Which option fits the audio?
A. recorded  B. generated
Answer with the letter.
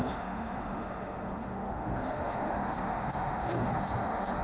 B